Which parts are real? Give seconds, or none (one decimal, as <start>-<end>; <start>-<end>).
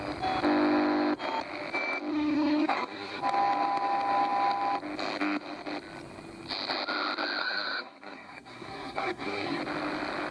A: 0.0-2.1; 3.2-7.4; 9.6-10.3